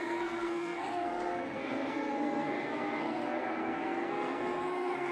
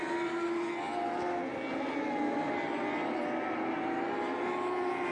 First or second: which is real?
second